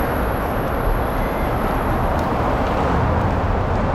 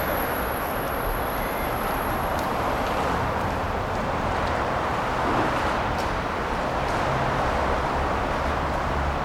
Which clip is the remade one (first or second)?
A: second